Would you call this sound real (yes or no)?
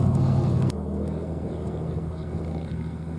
no